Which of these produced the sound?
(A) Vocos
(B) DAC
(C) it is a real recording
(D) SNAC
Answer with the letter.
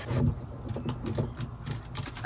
C